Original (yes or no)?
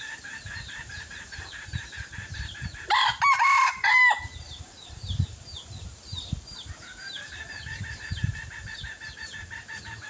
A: no